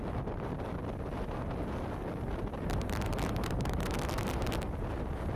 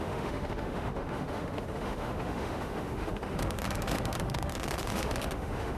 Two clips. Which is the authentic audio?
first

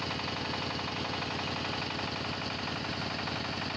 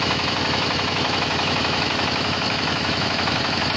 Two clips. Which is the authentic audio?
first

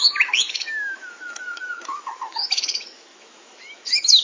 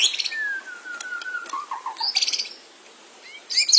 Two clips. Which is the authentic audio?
second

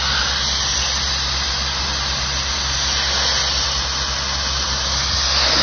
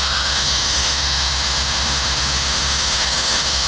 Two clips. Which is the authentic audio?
first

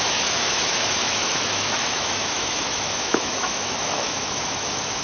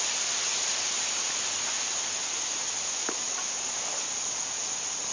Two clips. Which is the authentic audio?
second